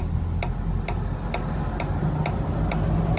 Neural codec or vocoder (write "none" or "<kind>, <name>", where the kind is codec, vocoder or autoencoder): none